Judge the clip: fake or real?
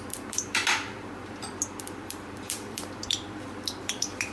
fake